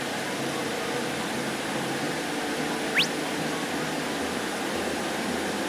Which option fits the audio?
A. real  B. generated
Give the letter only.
A